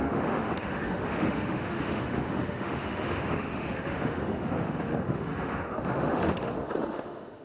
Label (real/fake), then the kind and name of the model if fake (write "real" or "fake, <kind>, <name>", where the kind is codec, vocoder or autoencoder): fake, autoencoder, DAC-VAE